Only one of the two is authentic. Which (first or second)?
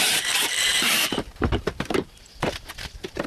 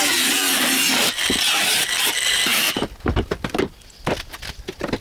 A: second